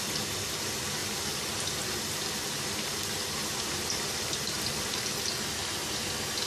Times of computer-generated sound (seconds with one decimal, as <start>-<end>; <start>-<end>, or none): none